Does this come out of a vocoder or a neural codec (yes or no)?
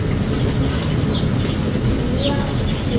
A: no